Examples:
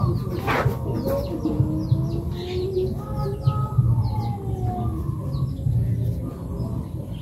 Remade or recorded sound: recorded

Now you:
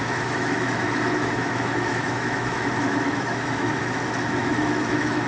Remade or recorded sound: remade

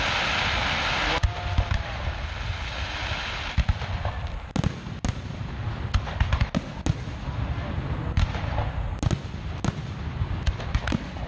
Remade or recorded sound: recorded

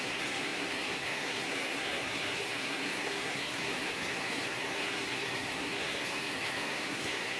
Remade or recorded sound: remade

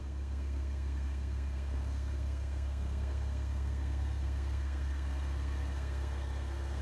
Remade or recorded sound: remade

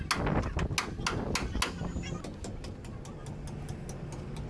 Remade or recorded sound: recorded